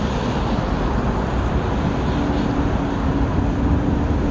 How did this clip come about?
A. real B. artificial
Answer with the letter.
A